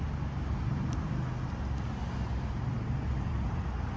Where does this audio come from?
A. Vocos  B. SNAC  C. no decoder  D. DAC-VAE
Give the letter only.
C